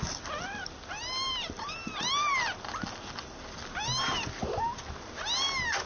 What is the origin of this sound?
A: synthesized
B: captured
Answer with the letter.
B